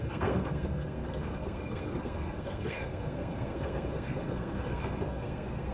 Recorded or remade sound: remade